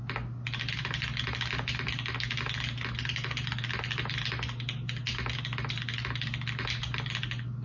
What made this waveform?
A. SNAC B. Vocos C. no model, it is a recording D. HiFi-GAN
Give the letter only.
C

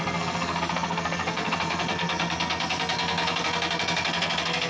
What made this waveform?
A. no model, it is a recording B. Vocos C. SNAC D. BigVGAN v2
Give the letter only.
C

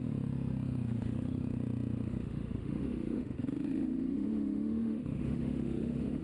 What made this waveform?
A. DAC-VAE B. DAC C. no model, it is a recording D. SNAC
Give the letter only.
A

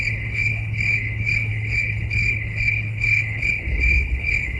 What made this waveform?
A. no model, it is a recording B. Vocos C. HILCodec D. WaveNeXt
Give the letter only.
C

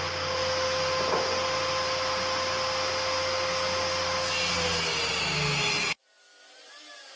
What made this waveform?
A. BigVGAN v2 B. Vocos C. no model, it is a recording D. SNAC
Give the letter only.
C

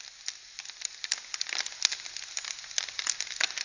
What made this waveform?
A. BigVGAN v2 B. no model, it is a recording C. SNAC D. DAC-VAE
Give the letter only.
B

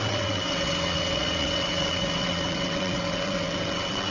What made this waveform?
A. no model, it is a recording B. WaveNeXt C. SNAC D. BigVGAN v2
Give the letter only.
B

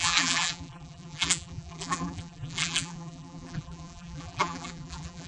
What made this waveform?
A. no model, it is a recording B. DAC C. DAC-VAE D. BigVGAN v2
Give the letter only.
D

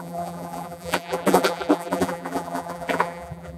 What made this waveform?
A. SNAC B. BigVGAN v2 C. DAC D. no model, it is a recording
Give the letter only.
B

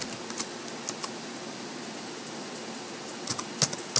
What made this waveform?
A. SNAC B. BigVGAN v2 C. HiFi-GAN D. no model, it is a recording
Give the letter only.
D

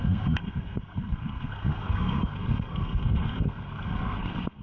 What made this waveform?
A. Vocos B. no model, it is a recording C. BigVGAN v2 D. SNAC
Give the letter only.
D